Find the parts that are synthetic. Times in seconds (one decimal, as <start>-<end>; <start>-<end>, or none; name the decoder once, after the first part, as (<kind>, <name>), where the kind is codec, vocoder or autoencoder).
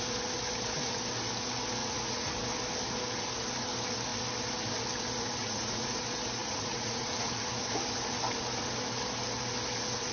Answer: 1.8-2.3 (vocoder, Vocos); 5.4-5.9; 6.4-7.1